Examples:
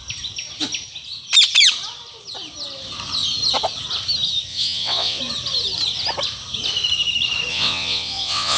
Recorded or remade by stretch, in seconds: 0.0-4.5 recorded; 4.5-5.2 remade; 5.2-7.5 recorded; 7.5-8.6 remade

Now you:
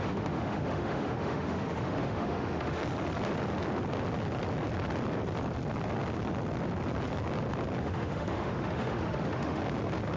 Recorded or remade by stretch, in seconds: 0.0-2.8 remade; 2.8-7.8 recorded; 7.8-9.6 remade; 9.6-10.2 recorded

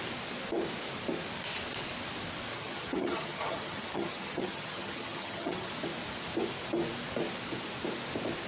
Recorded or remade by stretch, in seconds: 0.0-2.5 recorded; 2.5-5.7 remade; 5.7-8.5 recorded

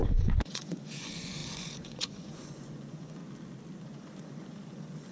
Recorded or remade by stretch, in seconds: 0.0-3.2 remade; 3.2-3.8 recorded; 3.8-5.1 remade

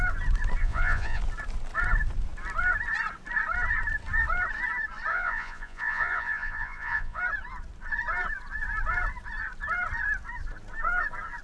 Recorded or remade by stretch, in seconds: 0.0-0.6 recorded; 0.6-1.2 remade; 1.2-5.1 recorded; 5.1-7.2 remade; 7.2-11.4 recorded